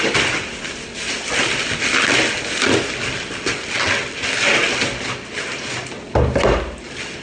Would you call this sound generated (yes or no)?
no